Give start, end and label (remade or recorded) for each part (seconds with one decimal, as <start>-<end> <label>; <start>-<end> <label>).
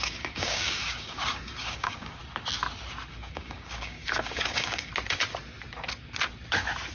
0.0-2.2 remade; 2.2-3.1 recorded; 3.1-4.9 remade; 4.9-6.9 recorded